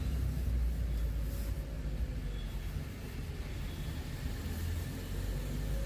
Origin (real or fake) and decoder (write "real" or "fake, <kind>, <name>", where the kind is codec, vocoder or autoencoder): real